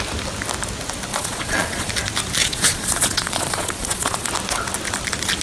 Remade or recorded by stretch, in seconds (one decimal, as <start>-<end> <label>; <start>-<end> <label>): 0.0-1.1 recorded; 1.1-1.9 remade; 1.9-2.4 recorded; 2.4-4.3 remade; 4.3-5.4 recorded